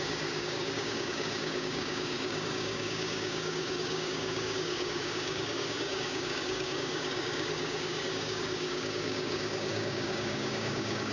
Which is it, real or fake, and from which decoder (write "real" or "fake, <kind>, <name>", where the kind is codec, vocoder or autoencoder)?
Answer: fake, codec, DAC